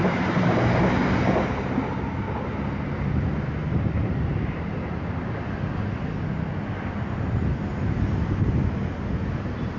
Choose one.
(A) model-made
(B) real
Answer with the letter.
B